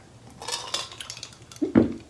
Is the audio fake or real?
real